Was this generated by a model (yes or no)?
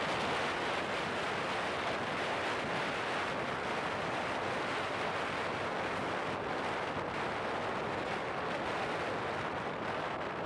no